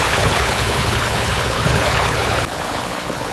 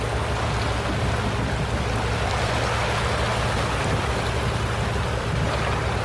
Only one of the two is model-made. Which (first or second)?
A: first